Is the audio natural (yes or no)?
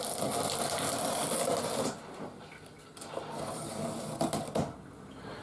yes